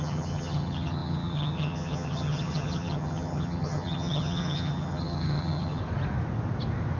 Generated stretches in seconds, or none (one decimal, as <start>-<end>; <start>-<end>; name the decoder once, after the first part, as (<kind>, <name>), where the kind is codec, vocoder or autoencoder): 0.0-5.8 (vocoder, HiFi-GAN)